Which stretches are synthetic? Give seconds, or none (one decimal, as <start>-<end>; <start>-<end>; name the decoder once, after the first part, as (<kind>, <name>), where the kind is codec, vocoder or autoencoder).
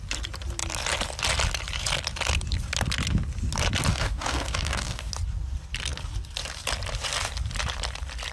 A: 3.9-5.1 (codec, DAC)